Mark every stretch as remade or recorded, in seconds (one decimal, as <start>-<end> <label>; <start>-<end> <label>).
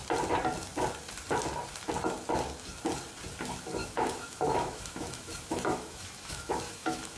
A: 0.0-3.8 recorded; 3.8-7.2 remade